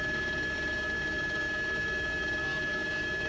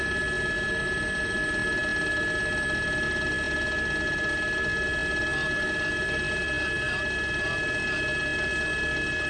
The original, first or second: second